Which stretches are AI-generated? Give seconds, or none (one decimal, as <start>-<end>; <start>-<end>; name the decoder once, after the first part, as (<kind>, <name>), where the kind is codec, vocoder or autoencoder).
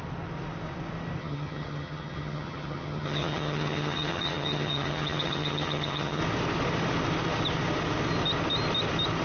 1.2-6.2 (vocoder, HiFi-GAN)